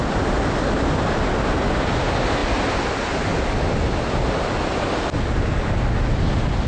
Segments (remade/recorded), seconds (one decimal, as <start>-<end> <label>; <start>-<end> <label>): 0.0-6.7 recorded